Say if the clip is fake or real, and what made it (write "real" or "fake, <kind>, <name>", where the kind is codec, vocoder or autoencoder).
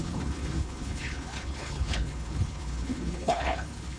fake, codec, HILCodec